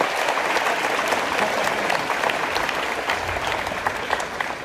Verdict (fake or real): real